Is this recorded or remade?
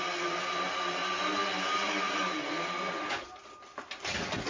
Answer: recorded